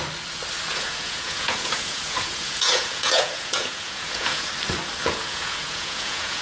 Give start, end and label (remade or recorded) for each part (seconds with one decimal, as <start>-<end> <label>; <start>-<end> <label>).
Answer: 0.0-0.7 recorded; 0.7-4.5 remade; 4.5-5.0 recorded; 5.0-6.4 remade

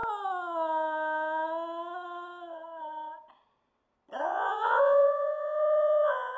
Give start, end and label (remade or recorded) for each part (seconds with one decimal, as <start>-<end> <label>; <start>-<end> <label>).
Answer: 0.0-4.2 recorded; 4.2-6.4 remade

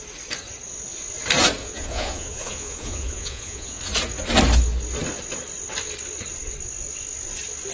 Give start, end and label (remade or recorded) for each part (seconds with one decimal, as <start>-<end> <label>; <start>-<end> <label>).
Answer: 0.0-1.6 recorded; 1.6-3.8 remade; 3.8-7.7 recorded

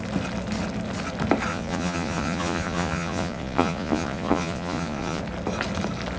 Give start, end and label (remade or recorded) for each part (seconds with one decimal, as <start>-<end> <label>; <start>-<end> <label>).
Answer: 0.0-1.5 recorded; 1.5-5.2 remade; 5.2-6.2 recorded

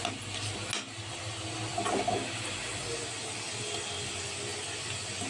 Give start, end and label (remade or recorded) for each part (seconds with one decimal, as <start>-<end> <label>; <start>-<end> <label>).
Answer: 0.0-5.3 recorded

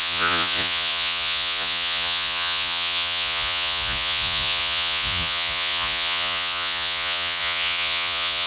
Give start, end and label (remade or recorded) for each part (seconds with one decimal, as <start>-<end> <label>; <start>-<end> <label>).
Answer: 0.0-8.5 remade

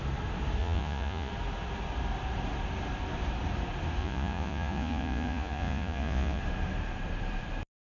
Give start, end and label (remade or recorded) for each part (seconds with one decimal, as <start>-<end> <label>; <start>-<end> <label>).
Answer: 0.0-0.6 recorded; 0.6-1.3 remade; 1.3-4.0 recorded; 4.0-6.4 remade; 6.4-8.0 recorded